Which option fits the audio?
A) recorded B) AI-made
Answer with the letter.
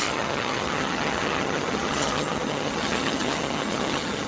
B